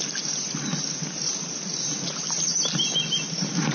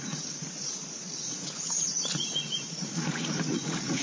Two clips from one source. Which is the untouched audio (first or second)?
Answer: first